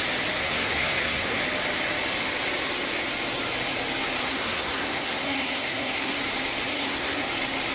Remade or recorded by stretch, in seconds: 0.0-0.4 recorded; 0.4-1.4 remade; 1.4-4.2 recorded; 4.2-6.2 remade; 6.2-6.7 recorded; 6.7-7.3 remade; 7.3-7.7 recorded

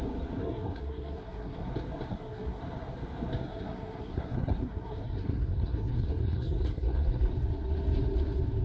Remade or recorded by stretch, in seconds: 0.0-0.4 recorded; 0.4-1.7 remade; 1.7-2.1 recorded; 2.1-2.6 remade; 2.6-3.4 recorded; 3.4-7.3 remade; 7.3-8.6 recorded

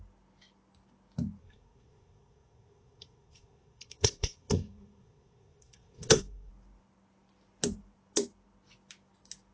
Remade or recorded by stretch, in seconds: 0.0-1.4 recorded; 1.4-6.5 remade; 6.5-9.5 recorded

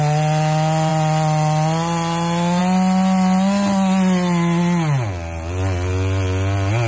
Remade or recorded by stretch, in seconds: 0.0-6.9 recorded

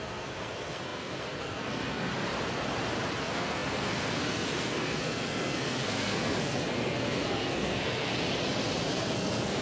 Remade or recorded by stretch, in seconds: 0.0-2.1 remade; 2.1-3.2 recorded; 3.2-8.1 remade; 8.1-8.9 recorded; 8.9-9.6 remade